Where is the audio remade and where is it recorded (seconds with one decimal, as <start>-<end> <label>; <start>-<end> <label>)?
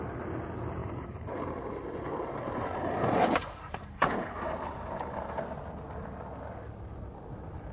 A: 0.0-0.8 recorded; 0.8-5.4 remade; 5.4-7.7 recorded